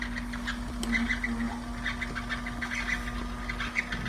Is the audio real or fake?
real